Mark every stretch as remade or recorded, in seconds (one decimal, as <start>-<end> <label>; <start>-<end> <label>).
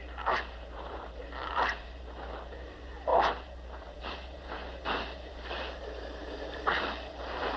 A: 0.0-7.6 remade